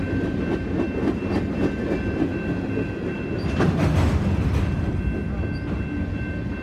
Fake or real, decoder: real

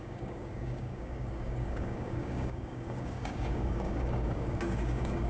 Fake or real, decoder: fake, codec, DAC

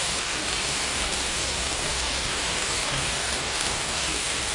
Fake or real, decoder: fake, codec, DAC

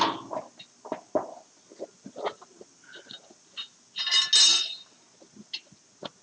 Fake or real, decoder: real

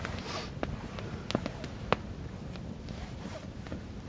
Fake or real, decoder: real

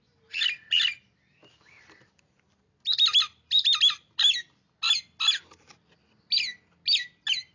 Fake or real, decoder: real